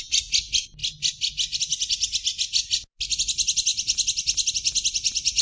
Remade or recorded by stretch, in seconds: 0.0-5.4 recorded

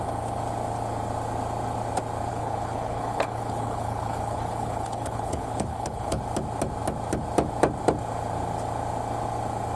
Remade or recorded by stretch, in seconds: 0.0-2.3 recorded; 2.3-6.2 remade; 6.2-9.8 recorded

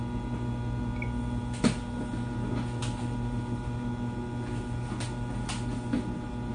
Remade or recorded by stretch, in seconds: 0.0-6.5 recorded

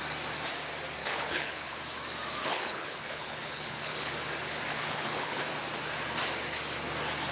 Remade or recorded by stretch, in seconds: 0.0-1.0 recorded; 1.0-1.8 remade; 1.8-2.4 recorded; 2.4-4.1 remade; 4.1-4.7 recorded; 4.7-5.4 remade; 5.4-7.3 recorded